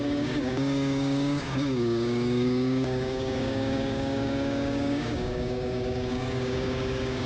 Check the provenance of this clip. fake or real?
fake